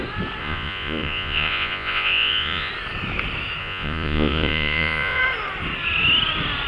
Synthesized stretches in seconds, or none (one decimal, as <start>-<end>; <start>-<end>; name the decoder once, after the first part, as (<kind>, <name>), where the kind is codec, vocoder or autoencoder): 0.4-2.7 (vocoder, Vocos); 3.6-5.2